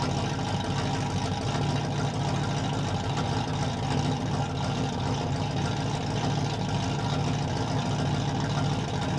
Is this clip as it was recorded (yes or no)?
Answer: yes